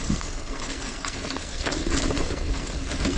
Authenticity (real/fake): fake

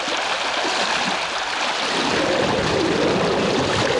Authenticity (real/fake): real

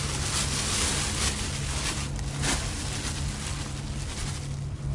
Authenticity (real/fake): real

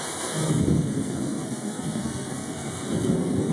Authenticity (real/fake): fake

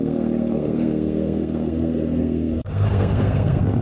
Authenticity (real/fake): fake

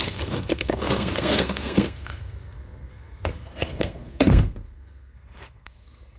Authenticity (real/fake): fake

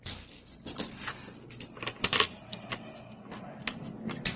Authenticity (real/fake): real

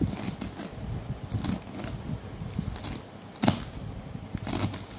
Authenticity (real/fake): real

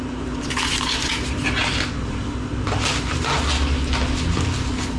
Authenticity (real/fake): real